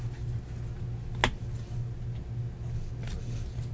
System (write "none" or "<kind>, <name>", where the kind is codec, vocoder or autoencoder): none